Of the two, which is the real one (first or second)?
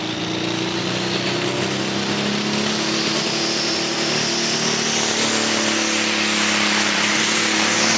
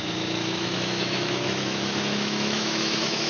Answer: first